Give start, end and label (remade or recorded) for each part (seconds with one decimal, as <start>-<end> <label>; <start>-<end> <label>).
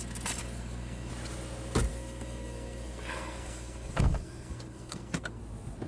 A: 0.0-0.4 recorded; 0.4-1.1 remade; 1.1-1.9 recorded; 1.9-5.4 remade; 5.4-5.9 recorded